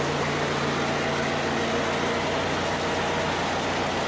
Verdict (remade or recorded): recorded